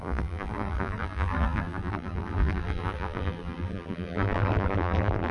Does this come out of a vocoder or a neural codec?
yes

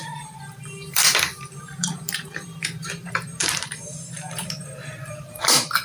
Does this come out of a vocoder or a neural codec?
yes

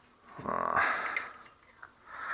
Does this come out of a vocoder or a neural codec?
no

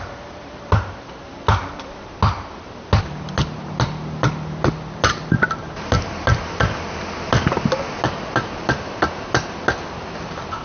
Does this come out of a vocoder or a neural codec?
no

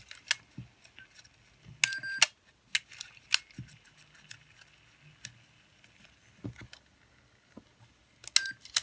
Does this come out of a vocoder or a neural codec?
no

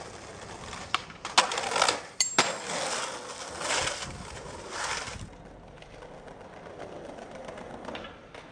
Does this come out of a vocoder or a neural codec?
no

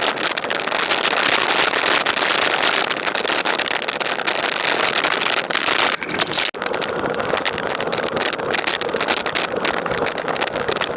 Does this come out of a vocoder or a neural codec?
no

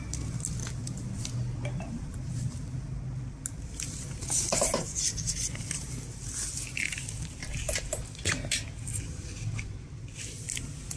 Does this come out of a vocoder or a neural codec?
no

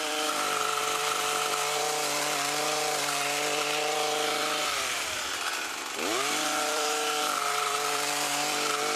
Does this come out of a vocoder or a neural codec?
yes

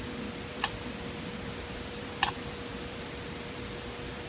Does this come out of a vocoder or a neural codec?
yes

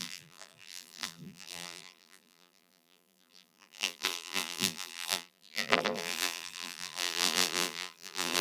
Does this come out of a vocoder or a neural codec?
yes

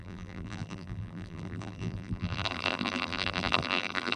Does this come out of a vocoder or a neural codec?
yes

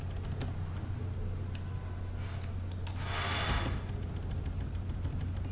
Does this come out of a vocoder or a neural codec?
no